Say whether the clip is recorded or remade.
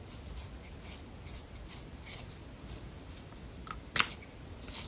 recorded